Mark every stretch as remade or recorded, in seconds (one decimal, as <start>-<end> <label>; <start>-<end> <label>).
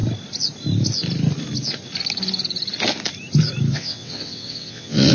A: 0.0-3.7 recorded; 3.7-5.1 remade